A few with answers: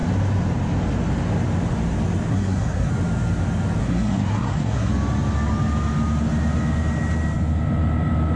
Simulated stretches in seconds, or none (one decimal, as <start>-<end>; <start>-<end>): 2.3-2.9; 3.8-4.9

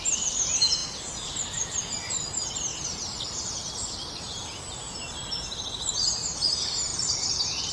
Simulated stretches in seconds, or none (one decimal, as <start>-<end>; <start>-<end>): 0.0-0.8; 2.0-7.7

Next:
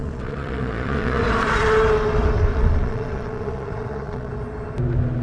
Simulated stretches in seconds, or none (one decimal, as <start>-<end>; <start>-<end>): 0.0-1.2; 2.5-4.3

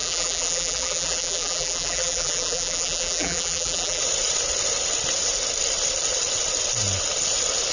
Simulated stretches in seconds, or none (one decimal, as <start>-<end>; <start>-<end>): 0.0-4.0